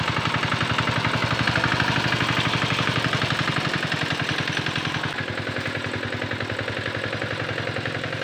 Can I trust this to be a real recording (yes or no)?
yes